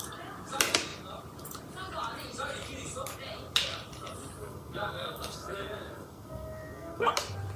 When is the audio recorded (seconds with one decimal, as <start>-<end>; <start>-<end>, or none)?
0.0-4.4; 7.1-7.6